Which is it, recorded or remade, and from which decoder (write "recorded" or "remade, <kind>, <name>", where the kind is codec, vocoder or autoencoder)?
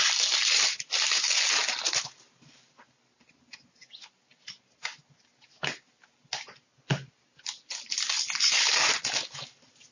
recorded